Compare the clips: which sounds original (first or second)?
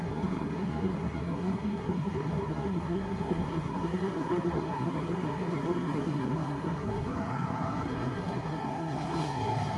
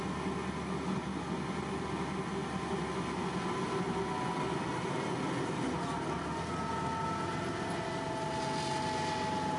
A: second